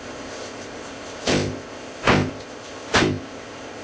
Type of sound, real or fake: fake